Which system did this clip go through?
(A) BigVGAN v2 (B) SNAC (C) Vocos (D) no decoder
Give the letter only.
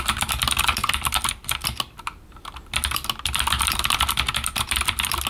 A